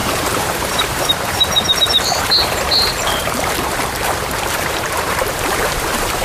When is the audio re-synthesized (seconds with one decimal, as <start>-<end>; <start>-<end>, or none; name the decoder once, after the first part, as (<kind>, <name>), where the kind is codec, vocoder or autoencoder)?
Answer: 0.0-6.2 (vocoder, BigVGAN v2)